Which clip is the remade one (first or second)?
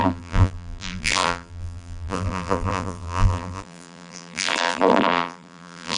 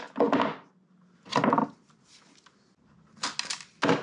first